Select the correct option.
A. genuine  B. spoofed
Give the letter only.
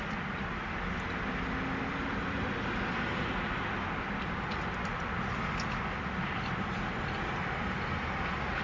A